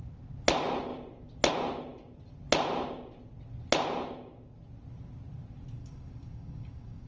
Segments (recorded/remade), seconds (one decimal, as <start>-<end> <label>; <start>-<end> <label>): 0.0-5.8 recorded; 5.8-7.1 remade

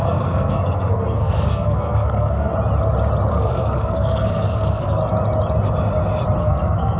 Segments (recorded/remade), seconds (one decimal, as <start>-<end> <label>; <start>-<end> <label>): 0.0-2.5 remade; 2.5-3.3 recorded; 3.3-5.0 remade; 5.0-6.4 recorded; 6.4-7.0 remade

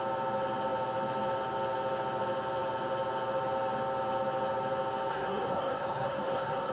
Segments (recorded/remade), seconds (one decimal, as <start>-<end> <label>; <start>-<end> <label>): 0.0-5.1 recorded; 5.1-6.7 remade

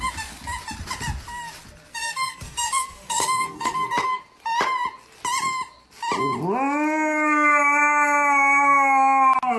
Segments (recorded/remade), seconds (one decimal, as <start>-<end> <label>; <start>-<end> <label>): 0.0-1.9 recorded; 1.9-4.2 remade; 4.2-9.6 recorded